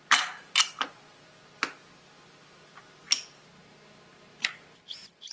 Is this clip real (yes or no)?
yes